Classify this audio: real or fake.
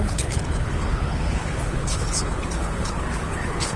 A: fake